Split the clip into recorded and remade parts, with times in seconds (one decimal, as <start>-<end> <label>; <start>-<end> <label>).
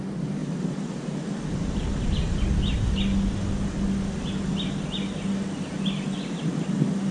0.0-7.1 recorded